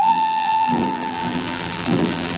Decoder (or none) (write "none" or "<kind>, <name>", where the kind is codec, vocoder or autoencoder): vocoder, BigVGAN v2